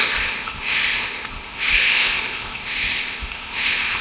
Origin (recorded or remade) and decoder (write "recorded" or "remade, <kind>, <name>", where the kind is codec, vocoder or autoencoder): remade, codec, ZipCodec